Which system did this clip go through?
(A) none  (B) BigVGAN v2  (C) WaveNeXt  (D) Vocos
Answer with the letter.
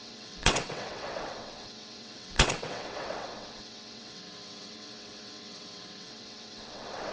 C